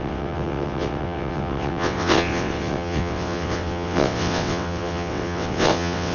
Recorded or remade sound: remade